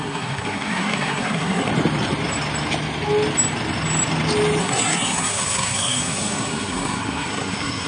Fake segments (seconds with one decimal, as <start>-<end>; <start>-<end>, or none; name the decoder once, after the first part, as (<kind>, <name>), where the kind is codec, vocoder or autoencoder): 0.0-1.7 (codec, SNAC); 4.6-7.9